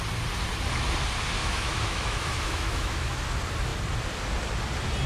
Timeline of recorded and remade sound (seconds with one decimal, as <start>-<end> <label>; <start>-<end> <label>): 0.0-1.4 recorded; 1.4-3.2 remade; 3.2-5.1 recorded